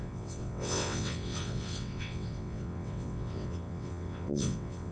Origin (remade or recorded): remade